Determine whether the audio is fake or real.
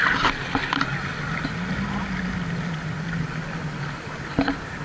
real